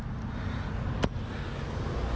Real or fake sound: real